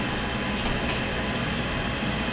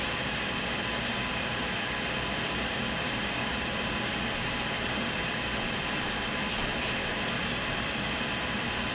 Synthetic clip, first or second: second